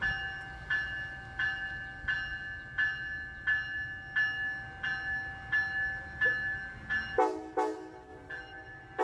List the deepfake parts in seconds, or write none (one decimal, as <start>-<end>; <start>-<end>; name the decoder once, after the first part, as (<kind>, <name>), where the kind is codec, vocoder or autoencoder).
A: none